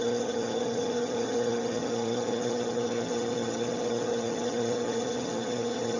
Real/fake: fake